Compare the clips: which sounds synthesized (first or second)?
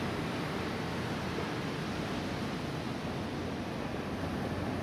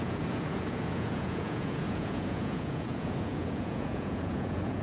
second